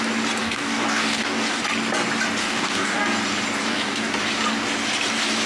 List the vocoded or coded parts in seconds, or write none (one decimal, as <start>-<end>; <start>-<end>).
0.4-1.6; 2.4-3.0; 3.6-4.1